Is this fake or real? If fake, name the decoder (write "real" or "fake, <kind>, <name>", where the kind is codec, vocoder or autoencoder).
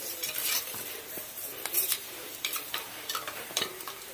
fake, vocoder, BigVGAN v2